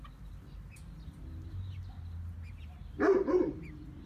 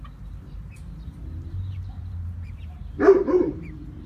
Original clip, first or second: first